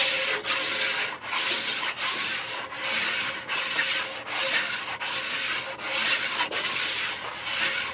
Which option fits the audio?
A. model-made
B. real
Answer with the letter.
B